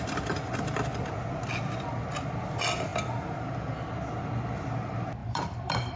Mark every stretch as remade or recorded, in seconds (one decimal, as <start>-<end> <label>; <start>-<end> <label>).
0.0-5.2 recorded; 5.2-6.0 remade

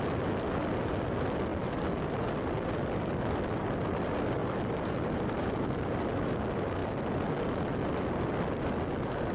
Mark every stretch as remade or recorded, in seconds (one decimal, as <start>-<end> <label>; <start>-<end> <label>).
0.0-1.5 recorded; 1.5-2.3 remade; 2.3-4.4 recorded; 4.4-5.6 remade; 5.6-9.3 recorded

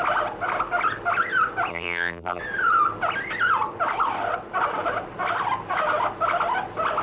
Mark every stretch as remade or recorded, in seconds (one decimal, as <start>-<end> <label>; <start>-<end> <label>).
0.0-1.7 recorded; 1.7-2.4 remade; 2.4-7.0 recorded

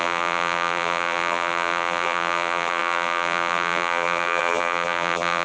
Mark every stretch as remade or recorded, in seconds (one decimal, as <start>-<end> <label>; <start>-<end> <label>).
0.0-5.4 remade

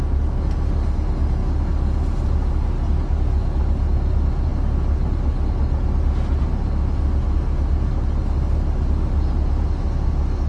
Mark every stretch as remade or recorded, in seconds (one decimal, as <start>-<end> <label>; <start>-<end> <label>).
0.0-10.5 recorded